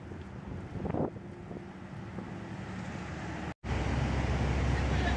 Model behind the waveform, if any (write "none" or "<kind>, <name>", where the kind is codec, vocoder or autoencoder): none